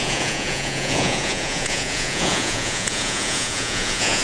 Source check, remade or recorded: remade